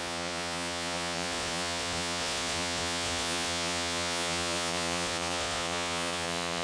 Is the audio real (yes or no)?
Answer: no